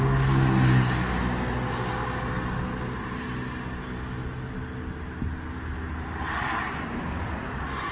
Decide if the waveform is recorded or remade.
recorded